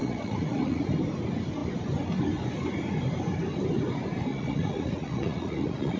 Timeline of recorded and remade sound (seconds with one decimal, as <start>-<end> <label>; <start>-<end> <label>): 0.0-0.9 remade; 0.9-4.3 recorded; 4.3-6.0 remade